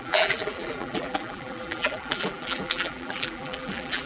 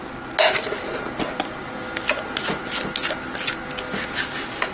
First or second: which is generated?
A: first